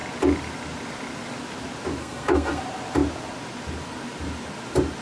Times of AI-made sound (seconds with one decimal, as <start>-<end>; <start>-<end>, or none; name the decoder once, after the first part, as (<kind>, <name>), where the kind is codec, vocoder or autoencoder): 2.0-2.6 (codec, SNAC)